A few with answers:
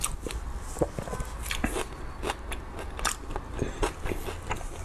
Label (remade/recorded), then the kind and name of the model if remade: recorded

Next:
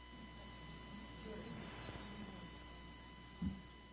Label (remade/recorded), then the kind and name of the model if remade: recorded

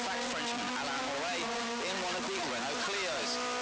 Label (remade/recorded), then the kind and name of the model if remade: recorded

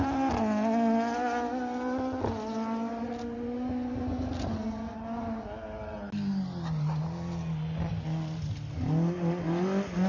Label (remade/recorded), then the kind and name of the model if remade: recorded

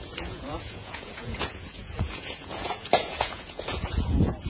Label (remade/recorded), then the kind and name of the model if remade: remade, vocoder, Vocos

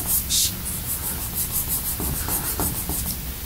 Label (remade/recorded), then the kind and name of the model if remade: recorded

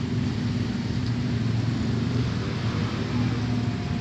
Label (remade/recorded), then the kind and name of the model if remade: recorded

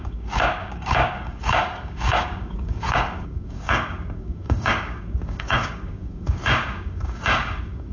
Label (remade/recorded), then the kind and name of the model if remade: remade, codec, DAC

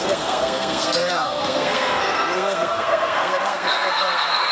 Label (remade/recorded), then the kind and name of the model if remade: remade, codec, SNAC